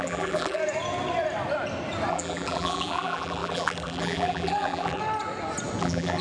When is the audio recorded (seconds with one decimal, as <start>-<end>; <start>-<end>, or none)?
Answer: 0.6-2.1; 5.0-5.8